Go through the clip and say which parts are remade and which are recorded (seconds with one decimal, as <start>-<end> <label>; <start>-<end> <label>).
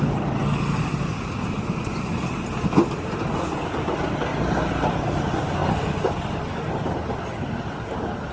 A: 0.0-8.3 recorded